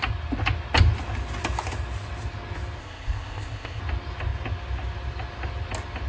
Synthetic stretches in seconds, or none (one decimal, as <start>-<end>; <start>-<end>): 2.8-3.8